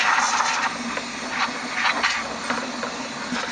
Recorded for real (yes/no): yes